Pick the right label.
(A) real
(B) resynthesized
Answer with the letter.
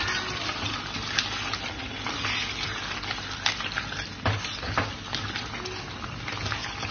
A